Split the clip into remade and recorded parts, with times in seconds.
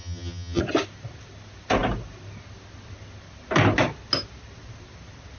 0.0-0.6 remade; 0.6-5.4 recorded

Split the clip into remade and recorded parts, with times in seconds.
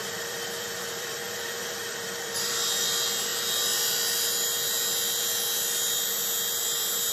0.0-2.5 remade; 2.5-7.1 recorded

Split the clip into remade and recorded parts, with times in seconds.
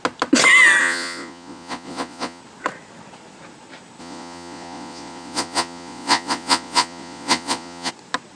0.0-0.8 recorded; 0.8-2.4 remade; 2.4-4.0 recorded; 4.0-7.9 remade; 7.9-8.4 recorded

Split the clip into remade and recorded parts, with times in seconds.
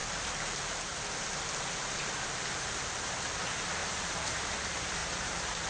0.0-3.0 remade; 3.0-3.8 recorded; 3.8-4.4 remade; 4.4-5.0 recorded; 5.0-5.7 remade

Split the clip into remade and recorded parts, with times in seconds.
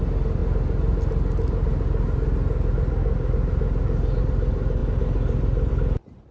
0.0-6.3 recorded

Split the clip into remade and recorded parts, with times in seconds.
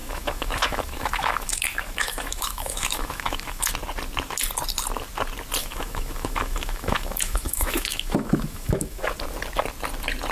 0.0-3.7 remade; 3.7-5.6 recorded; 5.6-9.1 remade; 9.1-10.3 recorded